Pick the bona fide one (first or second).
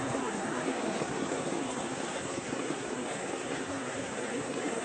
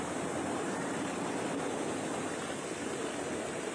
second